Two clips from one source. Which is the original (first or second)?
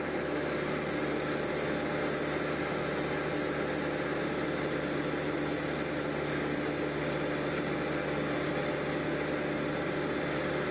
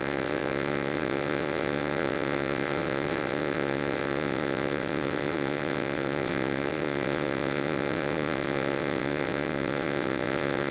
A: first